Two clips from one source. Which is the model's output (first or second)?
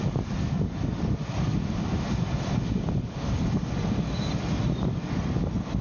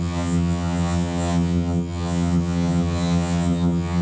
second